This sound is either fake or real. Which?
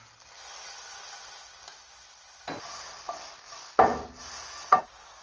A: real